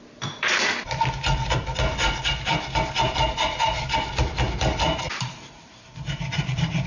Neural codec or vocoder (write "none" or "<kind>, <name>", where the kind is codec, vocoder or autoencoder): none